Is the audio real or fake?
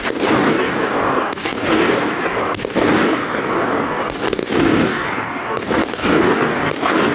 fake